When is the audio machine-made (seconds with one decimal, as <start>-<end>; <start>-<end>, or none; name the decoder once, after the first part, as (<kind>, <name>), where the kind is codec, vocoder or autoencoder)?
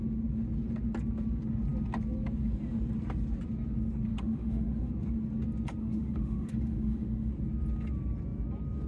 4.1-4.9 (autoencoder, DAC-VAE); 5.8-7.3